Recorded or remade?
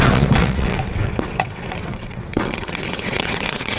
remade